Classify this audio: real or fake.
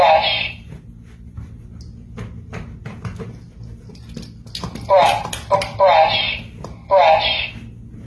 real